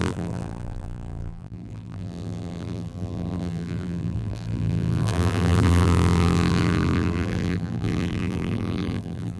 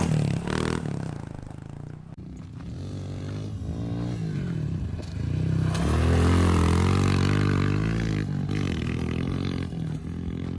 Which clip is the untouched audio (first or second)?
second